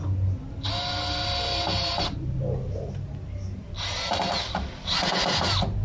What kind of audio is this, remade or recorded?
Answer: recorded